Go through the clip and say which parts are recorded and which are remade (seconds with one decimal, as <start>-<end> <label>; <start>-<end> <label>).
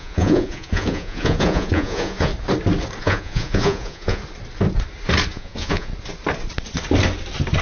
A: 0.0-2.3 remade; 2.3-3.0 recorded; 3.0-4.2 remade; 4.2-5.3 recorded; 5.3-5.9 remade; 5.9-7.6 recorded